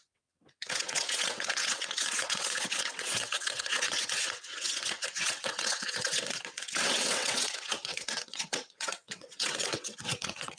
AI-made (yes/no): yes